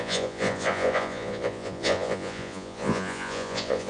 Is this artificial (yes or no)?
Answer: yes